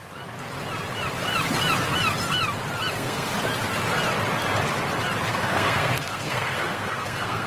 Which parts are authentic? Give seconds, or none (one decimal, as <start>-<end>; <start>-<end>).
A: 0.0-2.9; 3.3-5.3